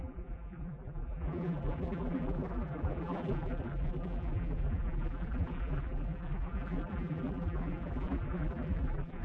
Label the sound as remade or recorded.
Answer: remade